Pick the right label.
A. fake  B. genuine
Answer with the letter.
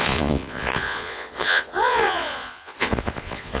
A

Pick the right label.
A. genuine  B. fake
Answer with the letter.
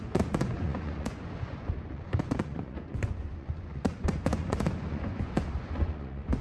B